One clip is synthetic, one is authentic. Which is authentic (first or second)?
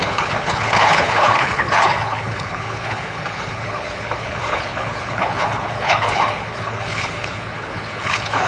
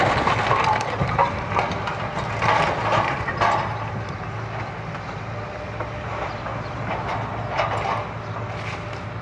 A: second